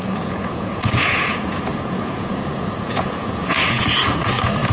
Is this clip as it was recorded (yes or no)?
no